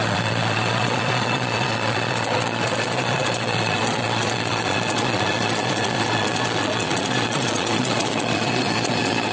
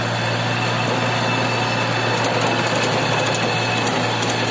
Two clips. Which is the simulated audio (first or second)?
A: first